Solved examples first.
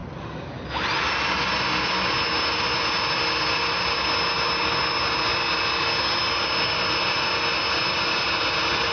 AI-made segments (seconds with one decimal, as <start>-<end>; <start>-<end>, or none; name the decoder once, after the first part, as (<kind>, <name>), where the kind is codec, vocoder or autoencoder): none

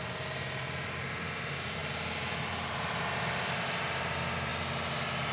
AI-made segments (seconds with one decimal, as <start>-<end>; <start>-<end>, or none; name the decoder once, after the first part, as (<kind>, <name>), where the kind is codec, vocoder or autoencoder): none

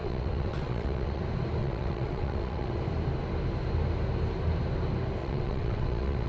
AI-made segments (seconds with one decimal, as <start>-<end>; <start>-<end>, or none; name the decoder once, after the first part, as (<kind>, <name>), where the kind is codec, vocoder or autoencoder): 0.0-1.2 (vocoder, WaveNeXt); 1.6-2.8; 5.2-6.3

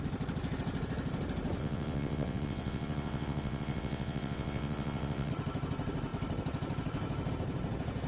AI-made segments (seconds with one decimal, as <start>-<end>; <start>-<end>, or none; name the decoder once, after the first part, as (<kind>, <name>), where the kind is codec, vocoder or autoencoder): 1.6-5.3 (vocoder, WaveNeXt)